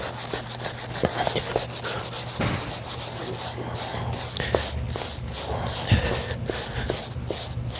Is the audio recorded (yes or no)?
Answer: yes